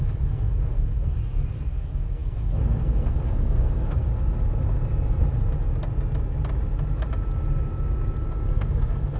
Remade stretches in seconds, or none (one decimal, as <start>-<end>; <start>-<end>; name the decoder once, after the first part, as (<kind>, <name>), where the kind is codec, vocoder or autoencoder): 0.0-4.1 (codec, SNAC); 8.5-9.2